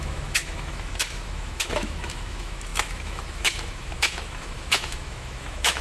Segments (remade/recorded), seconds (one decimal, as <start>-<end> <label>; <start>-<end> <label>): 0.0-5.8 remade